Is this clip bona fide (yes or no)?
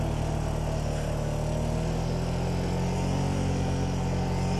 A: yes